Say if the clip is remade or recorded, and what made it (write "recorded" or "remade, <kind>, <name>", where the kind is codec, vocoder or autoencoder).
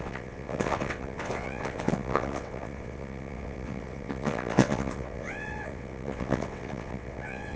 remade, vocoder, WaveNeXt